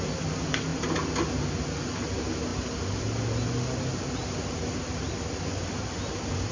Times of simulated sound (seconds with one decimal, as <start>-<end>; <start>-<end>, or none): none

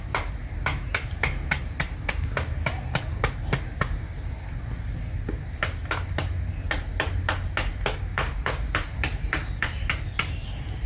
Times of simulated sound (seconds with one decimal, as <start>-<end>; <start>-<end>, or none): 8.1-9.9

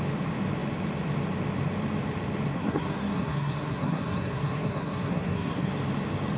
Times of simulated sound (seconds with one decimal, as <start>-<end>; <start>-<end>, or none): 2.5-5.7